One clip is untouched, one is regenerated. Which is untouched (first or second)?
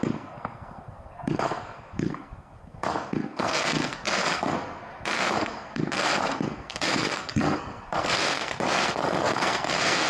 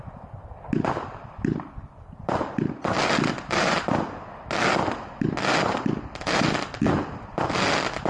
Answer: second